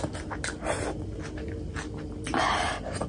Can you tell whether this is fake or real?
real